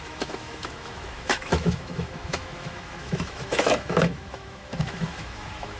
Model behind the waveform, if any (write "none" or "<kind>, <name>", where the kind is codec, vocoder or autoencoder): autoencoder, DAC-VAE